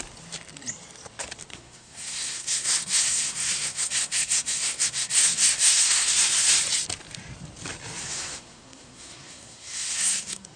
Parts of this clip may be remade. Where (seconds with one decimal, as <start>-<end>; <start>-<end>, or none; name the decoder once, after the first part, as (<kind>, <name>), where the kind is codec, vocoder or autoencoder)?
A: 1.5-6.6 (codec, SNAC); 8.0-10.6